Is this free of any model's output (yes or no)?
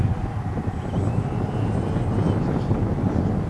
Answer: yes